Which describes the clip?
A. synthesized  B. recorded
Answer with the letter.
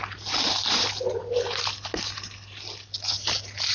B